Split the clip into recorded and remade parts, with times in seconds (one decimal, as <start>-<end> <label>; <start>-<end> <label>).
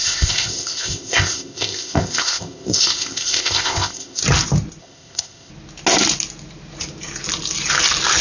0.0-4.2 remade; 4.2-4.8 recorded; 4.8-5.5 remade; 5.5-8.2 recorded